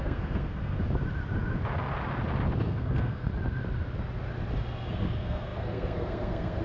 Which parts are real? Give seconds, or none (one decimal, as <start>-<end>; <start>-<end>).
0.8-2.6; 3.3-4.9